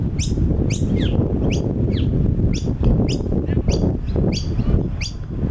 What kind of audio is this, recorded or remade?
recorded